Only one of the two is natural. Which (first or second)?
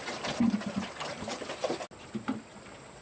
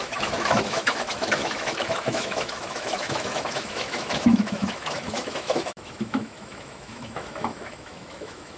first